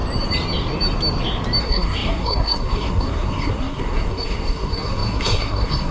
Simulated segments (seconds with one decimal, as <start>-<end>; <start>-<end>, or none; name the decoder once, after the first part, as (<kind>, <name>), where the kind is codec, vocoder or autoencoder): 1.6-5.9 (codec, SNAC)